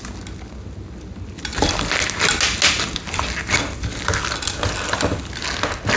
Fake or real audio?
real